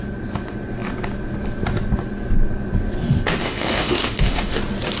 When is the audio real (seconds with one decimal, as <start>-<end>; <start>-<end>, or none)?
0.0-3.4; 4.6-5.0